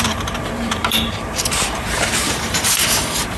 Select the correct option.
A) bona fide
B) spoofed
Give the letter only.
B